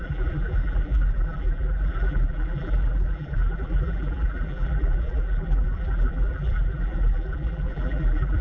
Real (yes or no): no